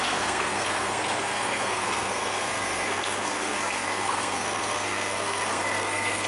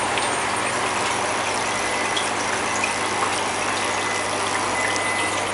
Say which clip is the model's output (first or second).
first